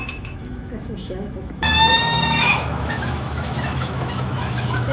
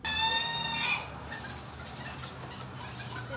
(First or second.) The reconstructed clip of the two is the first